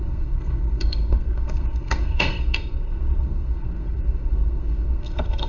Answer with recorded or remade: remade